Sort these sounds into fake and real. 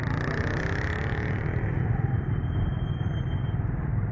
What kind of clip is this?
real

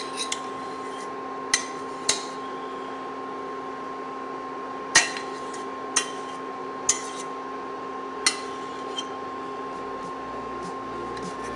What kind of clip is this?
real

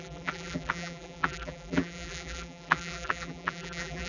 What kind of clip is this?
fake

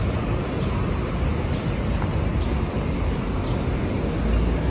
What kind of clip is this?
real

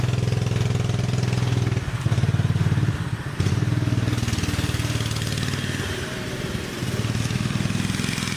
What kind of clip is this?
real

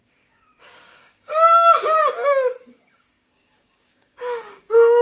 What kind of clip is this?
fake